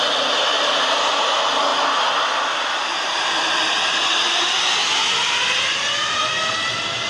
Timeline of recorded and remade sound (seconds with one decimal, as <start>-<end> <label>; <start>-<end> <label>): 0.0-7.1 recorded